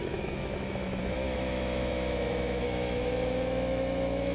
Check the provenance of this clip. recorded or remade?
remade